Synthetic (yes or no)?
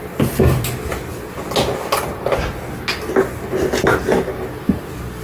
no